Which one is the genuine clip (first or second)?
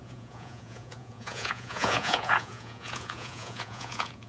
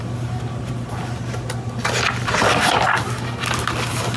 second